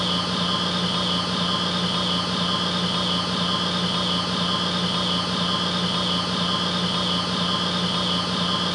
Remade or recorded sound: recorded